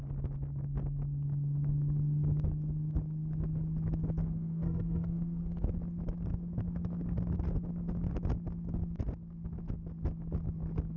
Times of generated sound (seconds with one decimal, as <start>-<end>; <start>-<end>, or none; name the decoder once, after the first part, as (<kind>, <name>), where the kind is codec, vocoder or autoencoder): 4.2-5.7 (codec, SNAC)